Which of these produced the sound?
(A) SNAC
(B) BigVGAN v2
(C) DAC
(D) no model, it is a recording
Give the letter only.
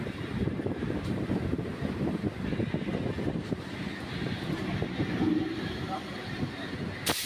B